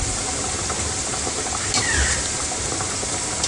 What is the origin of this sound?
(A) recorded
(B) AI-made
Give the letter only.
B